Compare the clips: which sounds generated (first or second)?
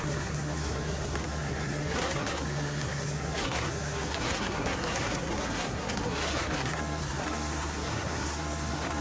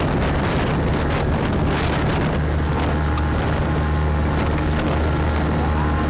first